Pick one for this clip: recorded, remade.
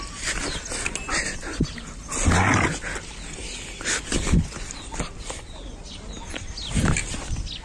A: recorded